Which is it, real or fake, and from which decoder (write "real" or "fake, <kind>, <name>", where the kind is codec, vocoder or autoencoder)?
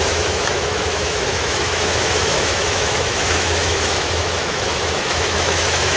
fake, autoencoder, DAC-VAE